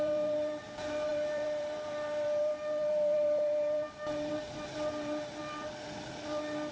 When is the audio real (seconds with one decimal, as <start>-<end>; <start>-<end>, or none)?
5.4-6.7